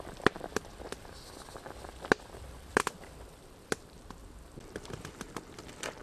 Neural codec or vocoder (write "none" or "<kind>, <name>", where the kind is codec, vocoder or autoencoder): vocoder, BigVGAN v2